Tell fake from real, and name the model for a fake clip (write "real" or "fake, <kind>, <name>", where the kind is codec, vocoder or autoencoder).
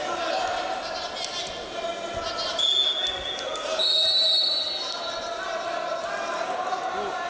real